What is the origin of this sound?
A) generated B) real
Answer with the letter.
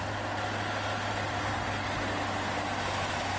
B